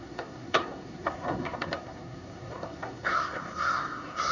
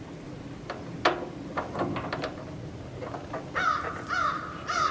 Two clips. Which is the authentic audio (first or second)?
second